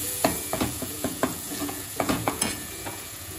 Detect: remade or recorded remade